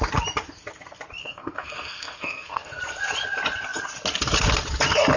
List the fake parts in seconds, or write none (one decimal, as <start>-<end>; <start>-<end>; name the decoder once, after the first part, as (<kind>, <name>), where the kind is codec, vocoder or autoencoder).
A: 1.2-2.8 (codec, SNAC)